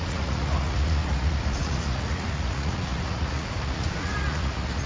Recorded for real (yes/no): no